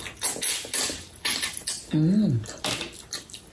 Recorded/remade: recorded